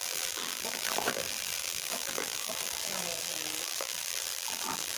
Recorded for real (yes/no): no